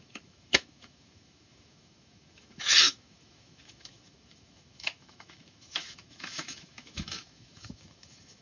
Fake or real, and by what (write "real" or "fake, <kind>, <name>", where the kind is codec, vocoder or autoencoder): fake, autoencoder, DAC-VAE